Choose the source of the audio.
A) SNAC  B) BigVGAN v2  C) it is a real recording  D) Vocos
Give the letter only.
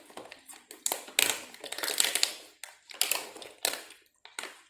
C